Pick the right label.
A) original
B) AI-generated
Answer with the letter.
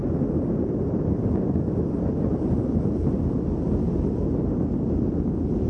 A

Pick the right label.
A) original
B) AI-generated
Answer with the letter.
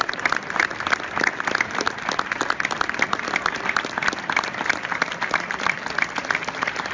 A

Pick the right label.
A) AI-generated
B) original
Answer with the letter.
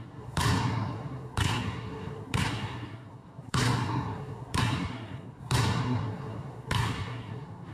A